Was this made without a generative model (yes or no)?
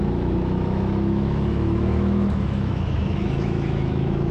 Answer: no